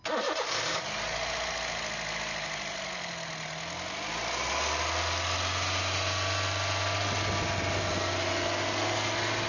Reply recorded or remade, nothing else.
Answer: recorded